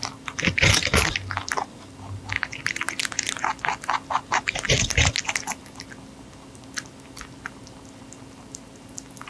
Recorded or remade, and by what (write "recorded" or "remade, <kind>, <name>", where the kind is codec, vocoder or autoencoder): recorded